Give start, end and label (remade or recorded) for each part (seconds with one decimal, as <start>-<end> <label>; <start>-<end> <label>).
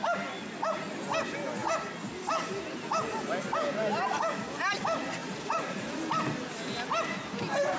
0.0-5.2 recorded; 5.2-5.9 remade; 5.9-7.8 recorded